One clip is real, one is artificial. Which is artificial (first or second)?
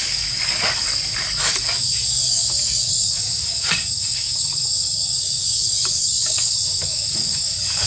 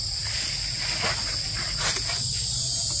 first